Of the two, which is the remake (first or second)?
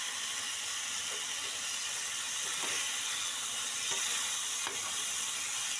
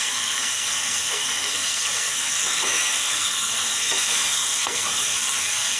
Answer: second